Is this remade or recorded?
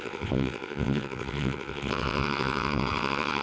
remade